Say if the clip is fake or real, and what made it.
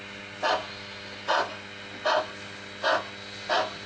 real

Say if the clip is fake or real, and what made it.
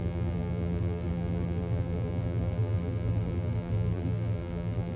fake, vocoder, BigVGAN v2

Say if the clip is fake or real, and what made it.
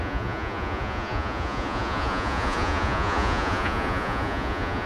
fake, vocoder, Vocos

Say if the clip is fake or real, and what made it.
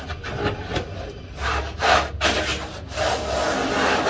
real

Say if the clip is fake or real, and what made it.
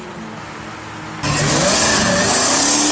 real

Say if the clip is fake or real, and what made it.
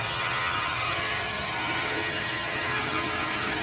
fake, vocoder, HiFi-GAN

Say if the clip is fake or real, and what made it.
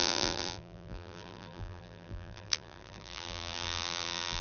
fake, vocoder, BigVGAN v2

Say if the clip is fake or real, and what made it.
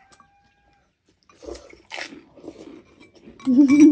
real